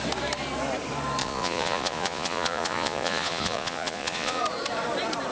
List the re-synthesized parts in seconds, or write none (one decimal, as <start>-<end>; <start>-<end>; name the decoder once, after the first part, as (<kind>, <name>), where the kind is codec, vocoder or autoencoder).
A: 1.2-4.4 (vocoder, Vocos)